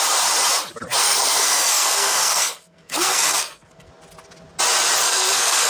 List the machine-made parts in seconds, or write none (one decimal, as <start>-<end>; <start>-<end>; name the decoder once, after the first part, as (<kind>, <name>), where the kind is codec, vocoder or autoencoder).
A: 1.0-3.9 (codec, SNAC); 5.0-5.7

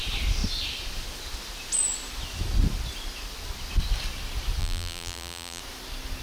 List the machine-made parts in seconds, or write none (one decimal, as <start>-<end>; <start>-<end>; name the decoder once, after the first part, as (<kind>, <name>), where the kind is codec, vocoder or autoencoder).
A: 4.6-5.6 (vocoder, BigVGAN v2)

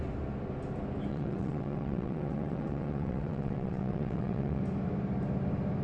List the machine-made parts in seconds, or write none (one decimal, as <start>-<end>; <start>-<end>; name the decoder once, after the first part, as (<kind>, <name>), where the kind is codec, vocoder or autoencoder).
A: 1.1-4.6 (vocoder, WaveNeXt)

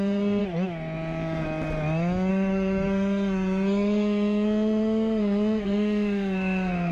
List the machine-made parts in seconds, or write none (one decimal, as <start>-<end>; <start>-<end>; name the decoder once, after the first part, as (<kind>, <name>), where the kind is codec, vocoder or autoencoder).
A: 0.0-0.4 (codec, SNAC); 2.3-6.9

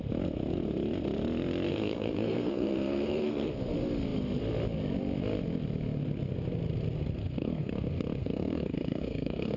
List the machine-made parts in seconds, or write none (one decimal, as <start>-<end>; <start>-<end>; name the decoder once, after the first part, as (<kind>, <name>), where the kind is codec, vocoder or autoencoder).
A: 1.7-3.5 (codec, SNAC); 7.2-7.7; 8.2-9.6

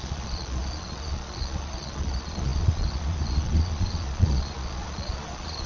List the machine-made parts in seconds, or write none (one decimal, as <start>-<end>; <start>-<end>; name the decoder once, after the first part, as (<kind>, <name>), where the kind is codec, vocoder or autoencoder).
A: 0.0-5.7 (vocoder, Vocos)

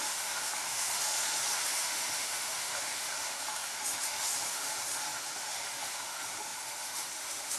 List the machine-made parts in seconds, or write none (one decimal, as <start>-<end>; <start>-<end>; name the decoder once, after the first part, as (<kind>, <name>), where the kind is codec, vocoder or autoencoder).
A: 0.0-7.6 (autoencoder, DAC-VAE)